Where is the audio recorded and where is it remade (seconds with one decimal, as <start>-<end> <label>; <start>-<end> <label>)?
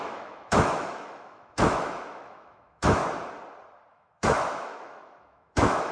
0.0-3.0 remade; 3.0-3.9 recorded; 3.9-5.9 remade